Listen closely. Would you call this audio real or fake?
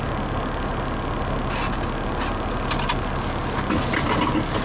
real